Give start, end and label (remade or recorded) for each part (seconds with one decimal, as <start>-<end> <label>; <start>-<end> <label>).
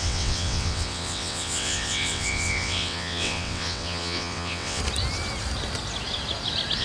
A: 0.0-4.8 remade; 4.8-6.8 recorded